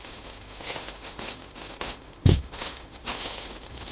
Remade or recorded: remade